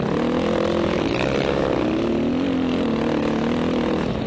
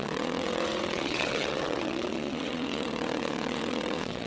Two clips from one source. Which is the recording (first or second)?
first